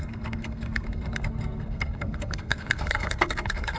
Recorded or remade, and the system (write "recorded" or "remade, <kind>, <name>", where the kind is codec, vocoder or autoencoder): remade, codec, SNAC